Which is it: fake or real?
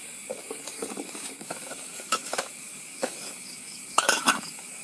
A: fake